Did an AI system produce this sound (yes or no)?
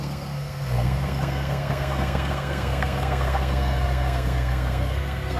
yes